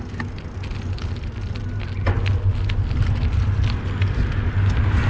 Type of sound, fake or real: real